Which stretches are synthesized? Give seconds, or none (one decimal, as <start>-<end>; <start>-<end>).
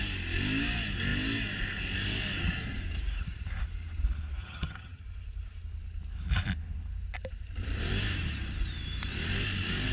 4.4-5.0